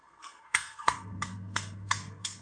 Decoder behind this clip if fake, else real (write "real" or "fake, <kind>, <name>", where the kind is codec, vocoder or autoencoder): fake, codec, SNAC